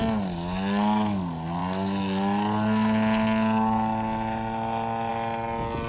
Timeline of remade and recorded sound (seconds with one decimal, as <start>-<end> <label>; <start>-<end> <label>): 0.0-5.9 recorded